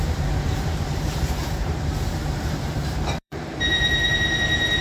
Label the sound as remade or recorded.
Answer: remade